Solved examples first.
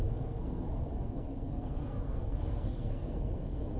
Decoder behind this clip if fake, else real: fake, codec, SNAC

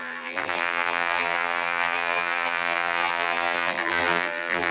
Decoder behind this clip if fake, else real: fake, vocoder, BigVGAN v2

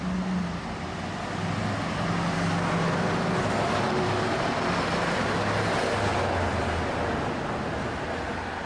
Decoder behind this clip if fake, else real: real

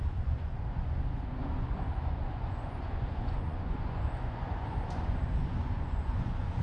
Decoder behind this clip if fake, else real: fake, vocoder, Vocos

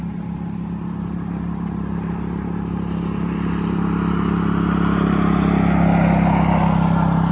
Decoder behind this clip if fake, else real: real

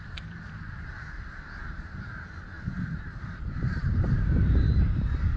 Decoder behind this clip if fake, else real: fake, vocoder, BigVGAN v2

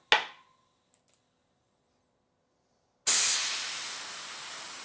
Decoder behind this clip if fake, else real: real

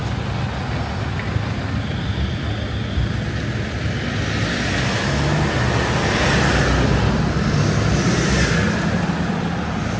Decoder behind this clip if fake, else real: real